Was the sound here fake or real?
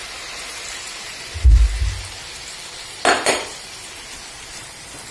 real